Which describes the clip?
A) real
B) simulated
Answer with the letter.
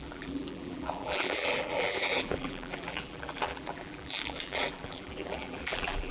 B